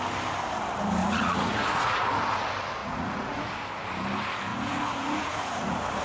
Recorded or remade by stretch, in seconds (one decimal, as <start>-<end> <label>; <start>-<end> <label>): 0.0-1.0 recorded; 1.0-2.1 remade; 2.1-2.8 recorded; 2.8-3.5 remade; 3.5-4.5 recorded; 4.5-6.0 remade